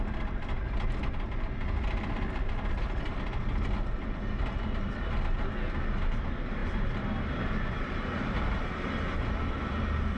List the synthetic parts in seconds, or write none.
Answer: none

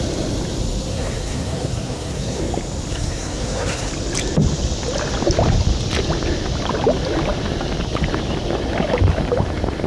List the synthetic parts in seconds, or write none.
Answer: 0.9-2.4 (codec, SNAC); 2.9-3.9

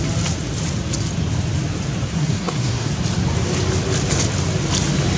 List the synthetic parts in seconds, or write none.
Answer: 2.1-2.9 (codec, SNAC)

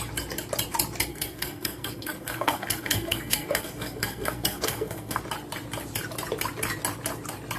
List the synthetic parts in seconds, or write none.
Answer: 1.1-5.2 (codec, SNAC)

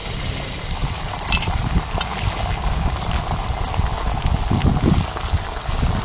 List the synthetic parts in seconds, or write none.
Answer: none